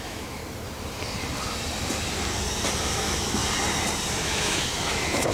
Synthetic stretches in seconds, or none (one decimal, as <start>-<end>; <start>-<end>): 0.0-0.4; 2.8-3.4; 4.2-5.3